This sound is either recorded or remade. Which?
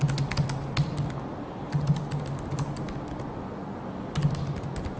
recorded